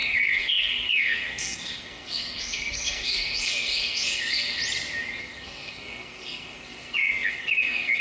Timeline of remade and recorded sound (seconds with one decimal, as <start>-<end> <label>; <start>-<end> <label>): 0.0-4.6 remade; 4.6-5.2 recorded; 5.2-8.0 remade